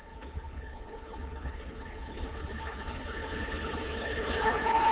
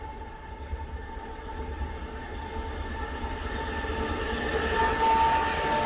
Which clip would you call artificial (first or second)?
first